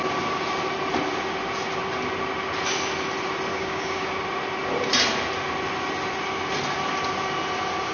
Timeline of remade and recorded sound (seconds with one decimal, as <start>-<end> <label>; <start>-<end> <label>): 0.0-3.5 recorded; 3.5-4.1 remade; 4.1-7.9 recorded